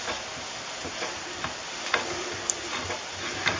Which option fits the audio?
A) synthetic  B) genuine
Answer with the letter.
B